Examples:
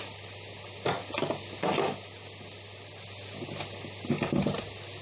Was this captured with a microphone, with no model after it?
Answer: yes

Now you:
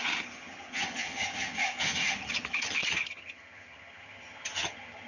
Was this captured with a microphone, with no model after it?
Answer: no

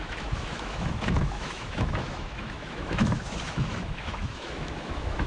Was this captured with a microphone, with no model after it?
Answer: no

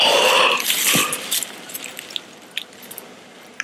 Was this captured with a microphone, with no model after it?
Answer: yes